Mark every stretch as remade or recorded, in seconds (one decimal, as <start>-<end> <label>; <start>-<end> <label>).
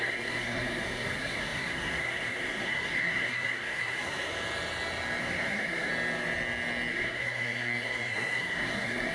0.0-4.3 remade; 4.3-5.2 recorded; 5.2-5.9 remade; 5.9-6.9 recorded; 6.9-9.1 remade